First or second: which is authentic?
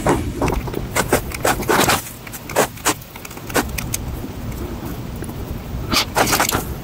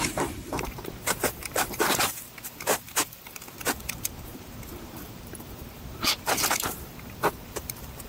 first